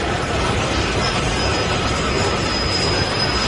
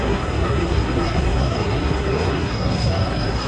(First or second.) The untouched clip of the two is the first